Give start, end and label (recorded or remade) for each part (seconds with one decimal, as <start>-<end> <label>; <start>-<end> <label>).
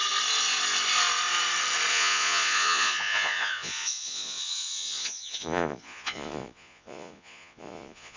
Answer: 0.0-1.9 recorded; 1.9-8.2 remade